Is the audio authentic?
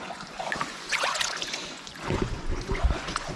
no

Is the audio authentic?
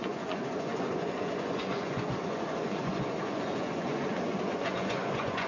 no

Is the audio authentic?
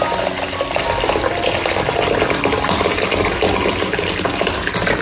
yes